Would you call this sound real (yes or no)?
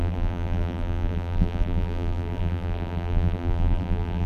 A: no